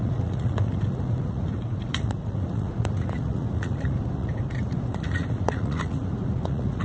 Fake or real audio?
fake